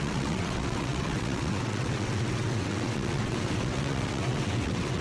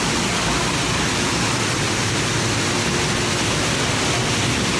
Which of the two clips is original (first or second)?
second